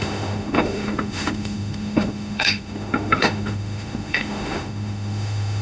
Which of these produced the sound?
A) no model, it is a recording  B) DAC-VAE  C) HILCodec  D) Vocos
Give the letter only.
B